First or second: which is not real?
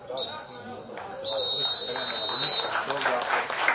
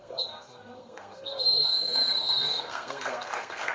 second